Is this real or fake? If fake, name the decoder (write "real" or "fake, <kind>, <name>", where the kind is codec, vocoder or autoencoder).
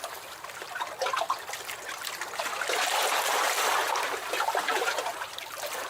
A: real